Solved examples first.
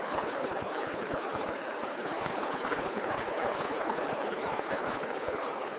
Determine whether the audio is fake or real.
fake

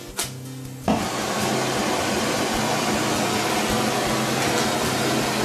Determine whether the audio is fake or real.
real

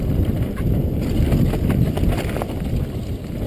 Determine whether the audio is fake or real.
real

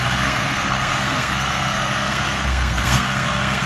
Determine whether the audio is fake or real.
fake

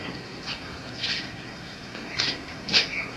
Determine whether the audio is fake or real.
fake